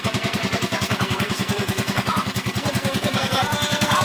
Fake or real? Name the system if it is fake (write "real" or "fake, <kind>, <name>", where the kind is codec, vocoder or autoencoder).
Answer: fake, codec, SNAC